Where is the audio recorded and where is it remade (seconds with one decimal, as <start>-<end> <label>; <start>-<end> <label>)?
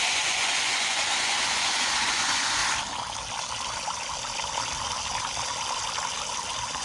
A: 0.0-2.6 remade; 2.6-6.8 recorded